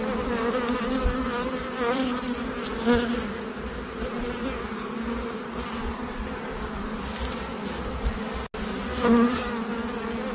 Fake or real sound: real